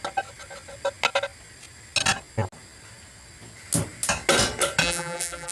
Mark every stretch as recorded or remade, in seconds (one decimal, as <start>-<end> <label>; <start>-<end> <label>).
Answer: 0.0-4.8 recorded; 4.8-5.5 remade